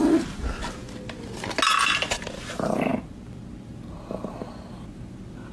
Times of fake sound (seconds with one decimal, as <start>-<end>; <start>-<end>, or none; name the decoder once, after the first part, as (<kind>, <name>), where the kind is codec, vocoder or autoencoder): none